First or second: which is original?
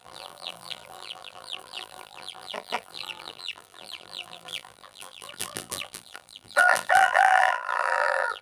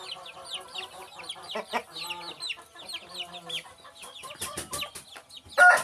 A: second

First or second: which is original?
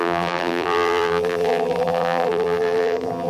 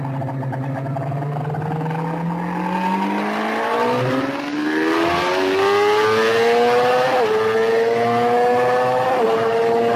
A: second